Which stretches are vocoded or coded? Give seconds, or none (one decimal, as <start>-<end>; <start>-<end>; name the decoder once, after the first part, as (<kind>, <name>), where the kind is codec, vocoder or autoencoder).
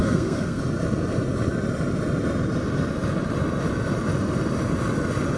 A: 0.0-0.6 (codec, SNAC)